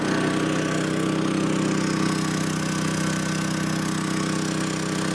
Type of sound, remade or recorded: recorded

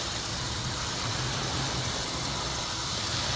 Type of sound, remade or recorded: recorded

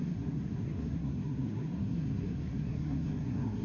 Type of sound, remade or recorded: remade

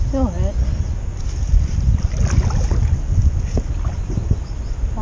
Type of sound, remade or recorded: recorded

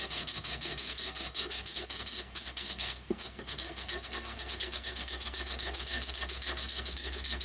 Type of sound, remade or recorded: remade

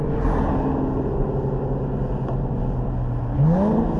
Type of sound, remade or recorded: recorded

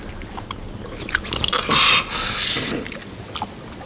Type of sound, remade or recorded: recorded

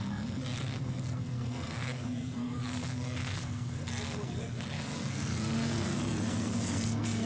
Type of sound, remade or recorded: remade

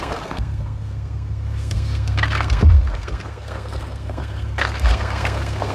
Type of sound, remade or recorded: remade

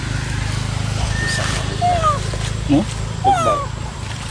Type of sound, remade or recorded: recorded